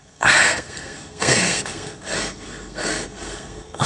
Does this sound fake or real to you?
fake